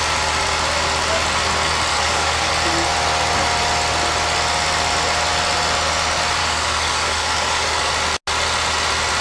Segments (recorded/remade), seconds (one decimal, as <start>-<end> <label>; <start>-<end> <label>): 0.0-1.9 recorded; 1.9-2.5 remade; 2.5-6.4 recorded; 6.4-7.9 remade; 7.9-9.2 recorded